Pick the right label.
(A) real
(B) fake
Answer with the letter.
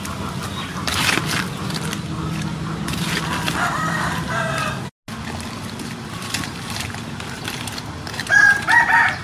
A